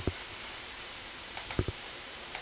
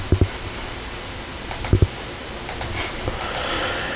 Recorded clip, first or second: second